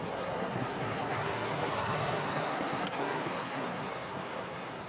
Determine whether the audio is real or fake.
fake